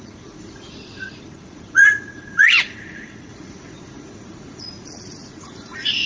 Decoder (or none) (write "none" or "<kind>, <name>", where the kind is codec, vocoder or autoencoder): vocoder, Vocos